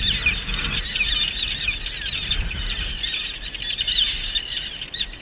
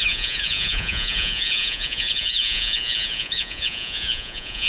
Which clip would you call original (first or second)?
first